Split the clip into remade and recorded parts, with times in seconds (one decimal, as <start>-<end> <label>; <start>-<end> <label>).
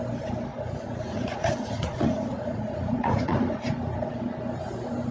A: 0.0-0.5 recorded; 0.5-3.6 remade; 3.6-5.1 recorded